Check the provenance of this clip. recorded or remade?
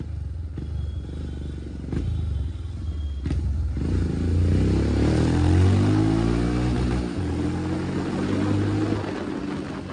recorded